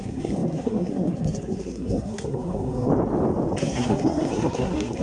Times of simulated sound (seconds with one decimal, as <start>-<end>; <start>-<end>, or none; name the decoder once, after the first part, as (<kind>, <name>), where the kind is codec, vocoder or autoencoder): 0.0-2.9 (codec, SNAC); 3.6-5.0